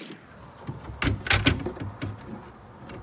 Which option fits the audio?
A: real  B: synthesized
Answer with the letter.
A